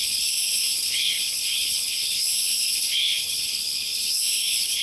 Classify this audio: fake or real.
fake